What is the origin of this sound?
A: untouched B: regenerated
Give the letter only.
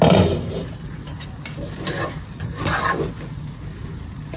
A